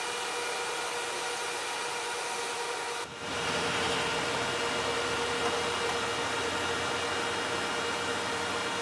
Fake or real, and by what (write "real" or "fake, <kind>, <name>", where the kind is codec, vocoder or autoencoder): real